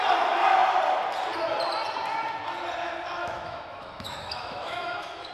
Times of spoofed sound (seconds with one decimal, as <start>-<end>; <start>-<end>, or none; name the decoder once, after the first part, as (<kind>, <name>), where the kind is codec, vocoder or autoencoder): 3.2-5.3 (autoencoder, DAC-VAE)